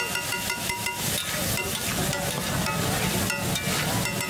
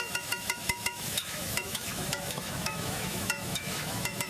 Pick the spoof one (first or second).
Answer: second